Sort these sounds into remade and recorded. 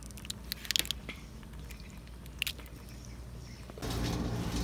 recorded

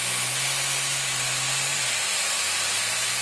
recorded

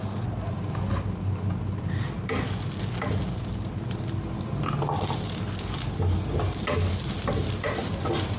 recorded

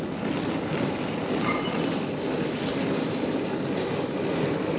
recorded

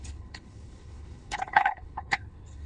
remade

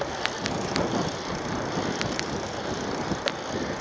recorded